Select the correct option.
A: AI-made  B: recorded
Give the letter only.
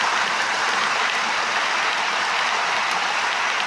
B